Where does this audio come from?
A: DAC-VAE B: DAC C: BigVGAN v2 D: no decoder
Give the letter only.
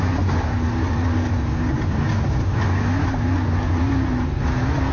D